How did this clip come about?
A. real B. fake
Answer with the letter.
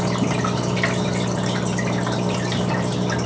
A